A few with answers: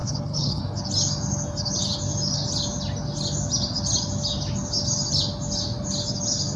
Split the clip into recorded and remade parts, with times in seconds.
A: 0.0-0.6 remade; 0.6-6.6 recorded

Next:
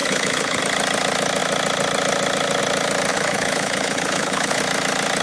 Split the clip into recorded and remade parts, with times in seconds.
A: 0.0-0.6 remade; 0.6-3.1 recorded; 3.1-4.6 remade; 4.6-5.2 recorded

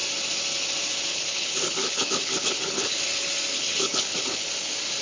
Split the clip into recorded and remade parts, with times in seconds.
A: 0.0-1.1 recorded; 1.1-3.0 remade; 3.0-3.5 recorded; 3.5-4.5 remade; 4.5-5.0 recorded